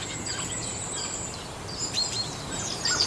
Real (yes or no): no